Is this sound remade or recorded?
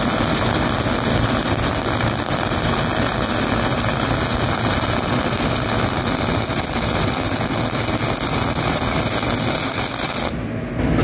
recorded